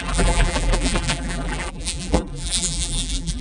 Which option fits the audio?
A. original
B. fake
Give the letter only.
B